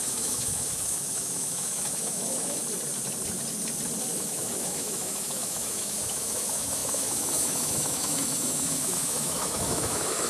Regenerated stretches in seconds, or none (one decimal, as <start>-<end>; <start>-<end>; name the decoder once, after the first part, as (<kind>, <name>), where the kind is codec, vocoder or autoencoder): 0.0-2.6 (autoencoder, DAC-VAE); 4.1-10.3